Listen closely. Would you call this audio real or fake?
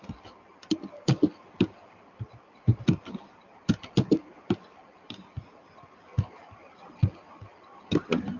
real